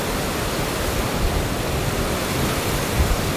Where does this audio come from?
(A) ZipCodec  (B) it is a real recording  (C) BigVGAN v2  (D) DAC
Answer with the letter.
B